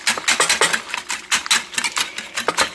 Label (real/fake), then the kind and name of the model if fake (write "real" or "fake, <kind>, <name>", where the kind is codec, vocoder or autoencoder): real